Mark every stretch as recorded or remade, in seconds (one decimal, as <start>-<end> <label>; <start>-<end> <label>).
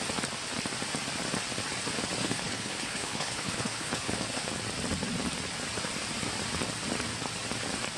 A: 0.0-2.2 recorded; 2.2-4.5 remade; 4.5-8.0 recorded